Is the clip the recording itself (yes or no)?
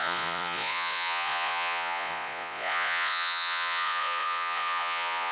no